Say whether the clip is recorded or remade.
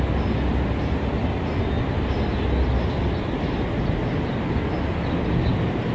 recorded